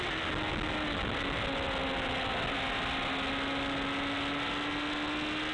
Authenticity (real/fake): real